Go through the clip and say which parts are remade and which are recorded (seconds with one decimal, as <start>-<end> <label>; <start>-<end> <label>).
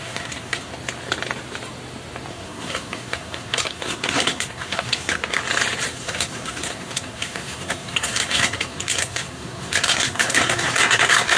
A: 0.0-0.7 remade; 0.7-2.3 recorded; 2.3-5.4 remade; 5.4-5.9 recorded; 5.9-11.4 remade